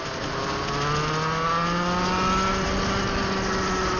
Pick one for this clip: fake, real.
real